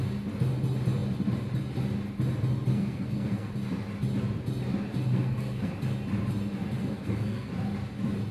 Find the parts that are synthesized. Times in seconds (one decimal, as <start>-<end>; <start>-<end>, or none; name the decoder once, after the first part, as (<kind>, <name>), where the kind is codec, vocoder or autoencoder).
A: 2.7-3.5 (codec, SNAC); 5.1-5.7; 6.8-7.5